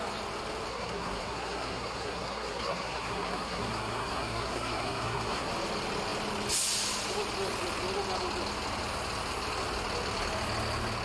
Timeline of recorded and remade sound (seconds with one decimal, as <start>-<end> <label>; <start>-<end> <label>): 0.0-0.7 recorded; 0.7-5.5 remade; 5.5-11.0 recorded